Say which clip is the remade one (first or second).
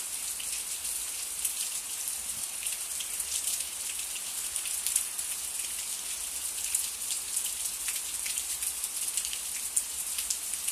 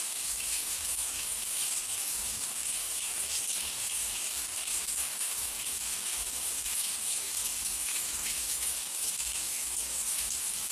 second